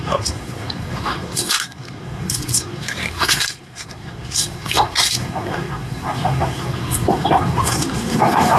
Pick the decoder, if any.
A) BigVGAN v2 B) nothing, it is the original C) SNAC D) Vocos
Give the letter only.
C